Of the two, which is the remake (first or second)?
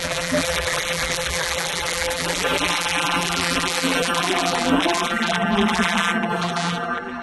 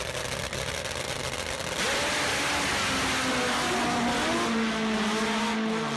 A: first